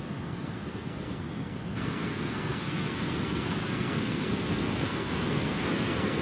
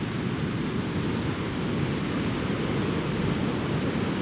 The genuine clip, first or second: second